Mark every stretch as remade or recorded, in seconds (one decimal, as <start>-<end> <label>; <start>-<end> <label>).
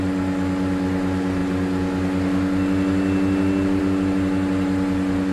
0.0-5.3 recorded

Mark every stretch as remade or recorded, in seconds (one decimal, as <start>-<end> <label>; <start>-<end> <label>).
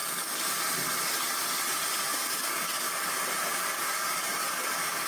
0.0-0.6 remade; 0.6-2.1 recorded; 2.1-3.1 remade; 3.1-3.5 recorded; 3.5-5.1 remade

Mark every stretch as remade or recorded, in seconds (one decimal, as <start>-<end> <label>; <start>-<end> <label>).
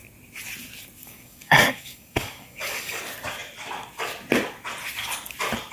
0.0-1.0 recorded; 1.0-3.0 remade; 3.0-5.7 recorded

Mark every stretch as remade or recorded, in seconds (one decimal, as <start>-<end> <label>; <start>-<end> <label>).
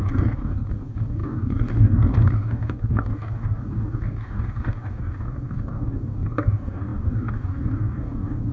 0.0-8.5 remade